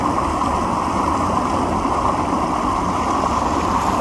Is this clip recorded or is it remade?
recorded